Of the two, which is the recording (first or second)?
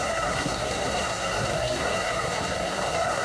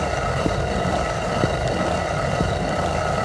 second